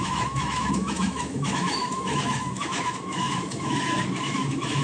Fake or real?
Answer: fake